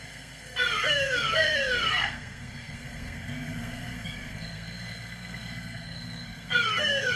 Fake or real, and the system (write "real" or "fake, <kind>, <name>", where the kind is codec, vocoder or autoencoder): fake, codec, SNAC